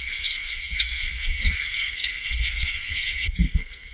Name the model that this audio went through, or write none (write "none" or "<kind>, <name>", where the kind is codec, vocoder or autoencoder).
codec, SNAC